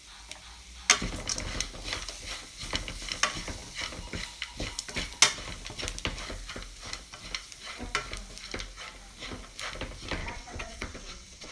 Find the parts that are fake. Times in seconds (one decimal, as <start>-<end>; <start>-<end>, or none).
10.2-11.5